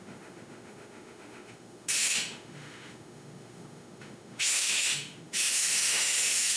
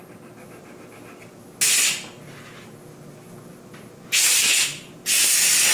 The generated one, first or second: first